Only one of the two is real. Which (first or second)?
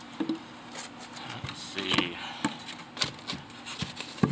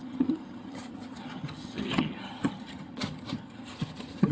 first